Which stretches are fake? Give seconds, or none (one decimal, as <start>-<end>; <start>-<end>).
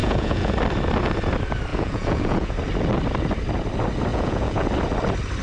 0.0-0.5; 1.7-2.5; 4.1-4.7